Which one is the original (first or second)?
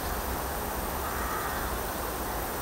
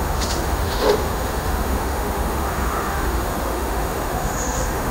first